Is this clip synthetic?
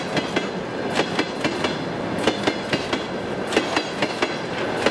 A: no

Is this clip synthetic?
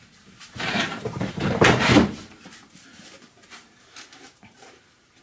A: yes